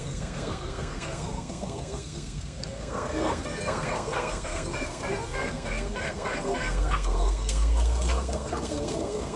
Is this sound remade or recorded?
remade